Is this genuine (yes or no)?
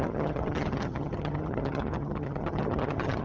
no